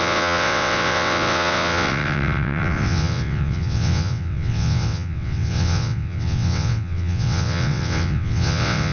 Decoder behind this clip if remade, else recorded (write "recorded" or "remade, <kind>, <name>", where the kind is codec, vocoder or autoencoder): remade, vocoder, WaveNeXt